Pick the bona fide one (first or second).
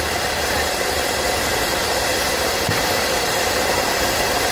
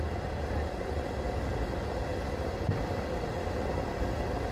second